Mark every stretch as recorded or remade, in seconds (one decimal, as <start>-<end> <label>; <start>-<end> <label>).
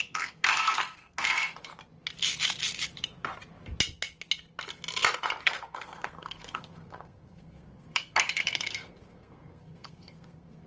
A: 0.0-1.7 remade; 1.7-5.4 recorded; 5.4-10.7 remade